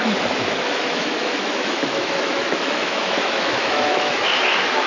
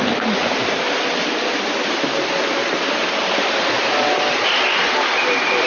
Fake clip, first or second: first